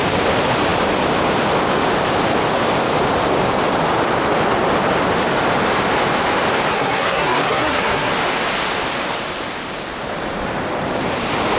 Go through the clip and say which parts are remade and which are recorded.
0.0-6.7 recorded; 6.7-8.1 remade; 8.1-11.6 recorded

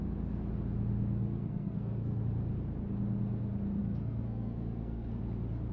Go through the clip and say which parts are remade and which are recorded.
0.0-1.2 recorded; 1.2-2.2 remade; 2.2-3.8 recorded; 3.8-5.2 remade; 5.2-5.7 recorded